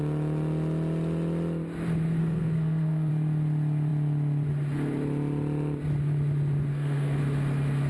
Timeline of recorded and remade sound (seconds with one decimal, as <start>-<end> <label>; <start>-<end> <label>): 0.0-2.2 recorded; 2.2-3.1 remade; 3.1-6.7 recorded; 6.7-7.2 remade; 7.2-7.9 recorded